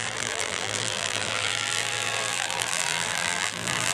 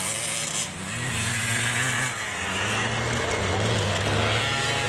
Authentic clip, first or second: second